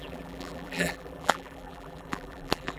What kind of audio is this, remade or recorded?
remade